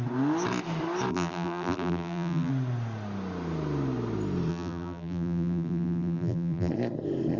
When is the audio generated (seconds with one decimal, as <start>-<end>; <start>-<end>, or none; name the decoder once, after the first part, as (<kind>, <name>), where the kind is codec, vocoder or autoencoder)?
1.1-2.5 (vocoder, BigVGAN v2); 4.5-6.7